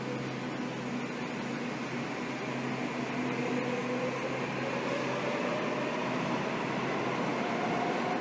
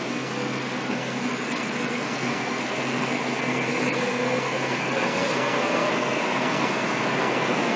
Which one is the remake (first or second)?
second